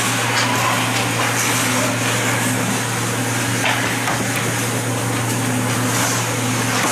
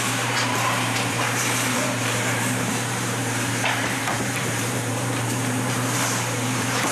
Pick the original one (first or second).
first